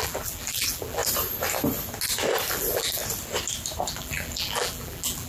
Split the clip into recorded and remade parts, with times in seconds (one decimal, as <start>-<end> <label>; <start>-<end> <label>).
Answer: 0.0-1.0 remade; 1.0-2.5 recorded; 2.5-3.0 remade; 3.0-3.9 recorded; 3.9-5.3 remade